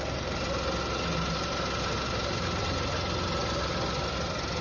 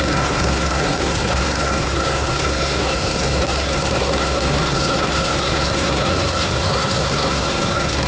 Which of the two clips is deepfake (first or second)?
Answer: second